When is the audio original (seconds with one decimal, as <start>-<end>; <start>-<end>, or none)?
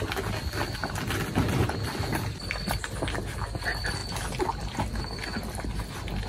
0.0-6.3